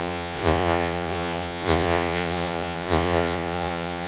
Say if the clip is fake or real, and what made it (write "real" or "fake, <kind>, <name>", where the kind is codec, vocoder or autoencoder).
fake, vocoder, Vocos